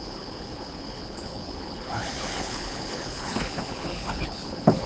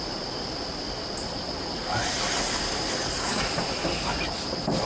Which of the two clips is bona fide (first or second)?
second